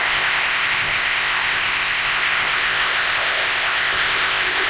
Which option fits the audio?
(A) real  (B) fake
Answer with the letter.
B